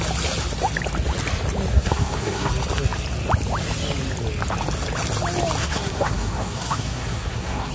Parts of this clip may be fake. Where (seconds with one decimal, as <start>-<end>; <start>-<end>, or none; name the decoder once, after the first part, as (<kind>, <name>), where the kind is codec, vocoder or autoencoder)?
1.7-2.5 (codec, SNAC); 5.6-7.7